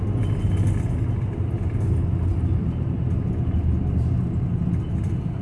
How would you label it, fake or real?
real